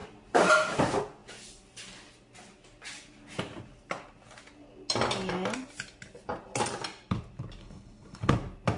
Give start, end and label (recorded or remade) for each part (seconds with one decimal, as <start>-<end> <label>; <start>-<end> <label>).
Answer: 0.0-7.6 recorded; 7.6-8.3 remade; 8.3-8.8 recorded